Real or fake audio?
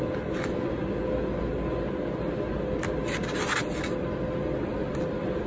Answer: real